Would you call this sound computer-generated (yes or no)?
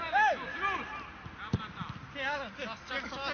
no